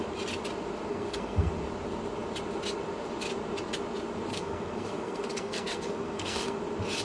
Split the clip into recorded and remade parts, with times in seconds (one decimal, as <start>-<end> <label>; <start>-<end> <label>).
0.0-0.9 recorded; 0.9-1.5 remade; 1.5-4.3 recorded; 4.3-6.6 remade; 6.6-7.0 recorded